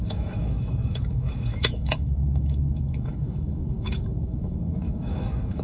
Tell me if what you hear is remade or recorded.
remade